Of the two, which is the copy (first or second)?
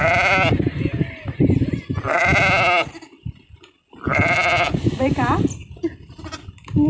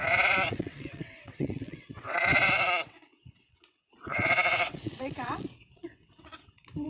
second